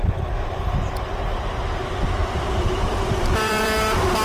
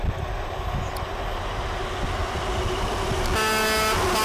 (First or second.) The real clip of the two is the second